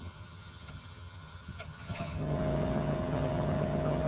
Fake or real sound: fake